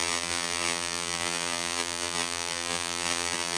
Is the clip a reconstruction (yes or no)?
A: yes